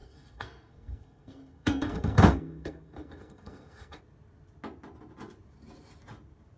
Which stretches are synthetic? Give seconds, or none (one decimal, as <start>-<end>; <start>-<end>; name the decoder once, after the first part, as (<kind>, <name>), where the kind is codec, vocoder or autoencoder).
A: 0.0-4.0 (codec, SNAC)